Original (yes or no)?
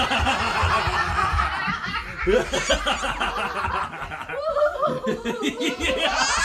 yes